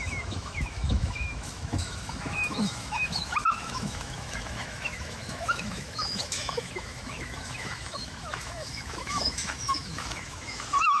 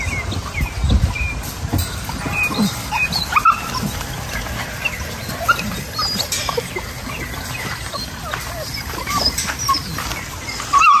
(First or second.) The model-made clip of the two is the first